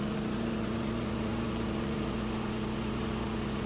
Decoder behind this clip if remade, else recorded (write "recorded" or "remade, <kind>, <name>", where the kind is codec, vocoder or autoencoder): remade, vocoder, Vocos